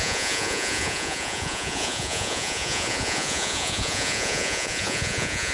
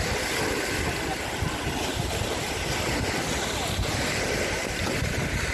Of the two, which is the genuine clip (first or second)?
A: second